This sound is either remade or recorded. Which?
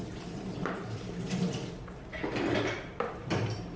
remade